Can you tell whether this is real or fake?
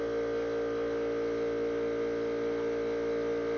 real